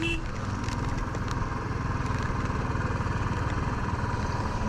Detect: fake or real real